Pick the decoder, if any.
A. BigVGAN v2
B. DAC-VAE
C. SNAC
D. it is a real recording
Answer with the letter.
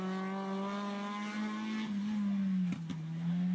D